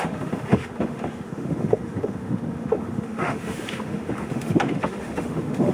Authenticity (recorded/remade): remade